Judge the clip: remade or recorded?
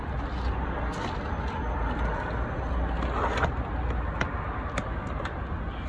recorded